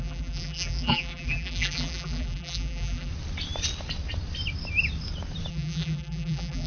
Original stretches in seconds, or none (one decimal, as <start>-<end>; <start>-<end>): 3.1-5.5